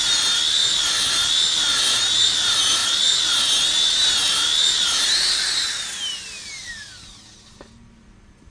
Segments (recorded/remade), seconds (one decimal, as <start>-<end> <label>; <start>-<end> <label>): 0.0-8.5 recorded